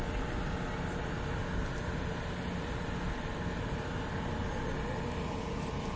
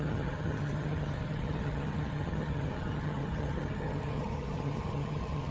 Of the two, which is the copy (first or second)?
second